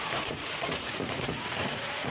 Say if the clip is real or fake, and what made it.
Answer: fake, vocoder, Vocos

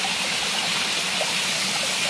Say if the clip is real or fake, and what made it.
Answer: real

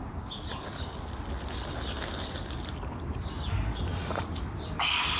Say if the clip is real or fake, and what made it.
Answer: real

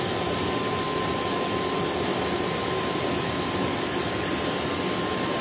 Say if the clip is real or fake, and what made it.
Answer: real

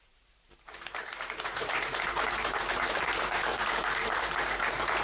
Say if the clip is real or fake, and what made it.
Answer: fake, vocoder, BigVGAN v2